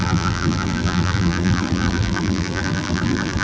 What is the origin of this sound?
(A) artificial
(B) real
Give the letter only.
A